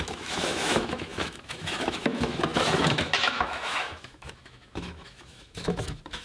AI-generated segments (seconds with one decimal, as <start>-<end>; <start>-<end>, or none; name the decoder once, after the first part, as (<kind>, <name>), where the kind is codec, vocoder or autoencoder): 0.0-6.2 (autoencoder, DAC-VAE)